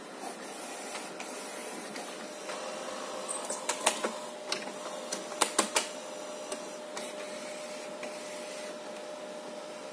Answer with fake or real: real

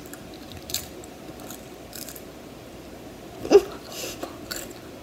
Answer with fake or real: fake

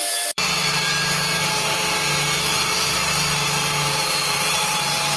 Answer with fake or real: fake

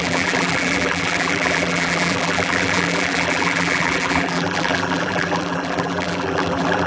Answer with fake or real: fake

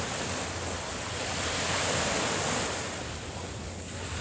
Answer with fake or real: real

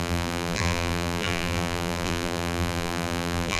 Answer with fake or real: fake